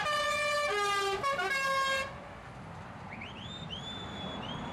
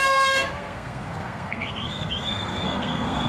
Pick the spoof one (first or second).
second